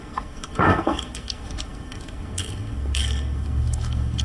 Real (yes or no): no